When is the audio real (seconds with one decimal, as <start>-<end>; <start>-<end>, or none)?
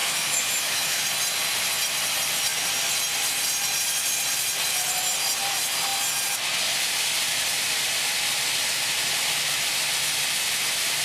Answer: 1.0-11.0